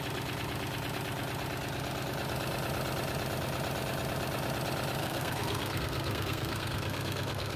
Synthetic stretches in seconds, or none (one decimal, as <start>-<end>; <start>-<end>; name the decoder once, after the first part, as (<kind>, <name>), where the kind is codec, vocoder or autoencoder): 5.0-7.6 (codec, SNAC)